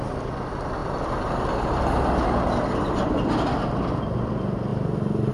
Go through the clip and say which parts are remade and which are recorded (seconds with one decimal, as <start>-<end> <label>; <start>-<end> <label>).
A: 0.0-5.3 recorded